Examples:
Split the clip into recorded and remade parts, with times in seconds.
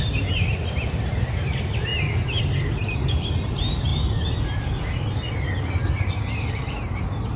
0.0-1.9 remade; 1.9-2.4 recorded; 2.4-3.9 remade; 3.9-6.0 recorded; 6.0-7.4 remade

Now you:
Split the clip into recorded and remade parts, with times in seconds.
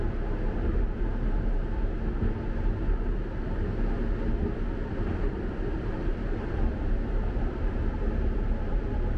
0.0-4.9 recorded; 4.9-9.2 remade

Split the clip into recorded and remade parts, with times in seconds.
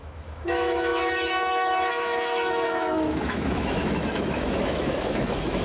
0.0-5.6 remade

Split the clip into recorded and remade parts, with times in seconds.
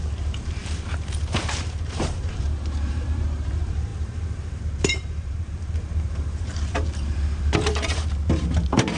0.0-9.0 remade